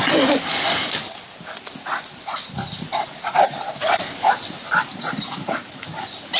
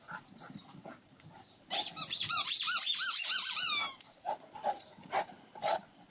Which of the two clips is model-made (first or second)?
second